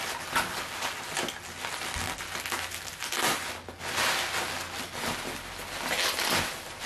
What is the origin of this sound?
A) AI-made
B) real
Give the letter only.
B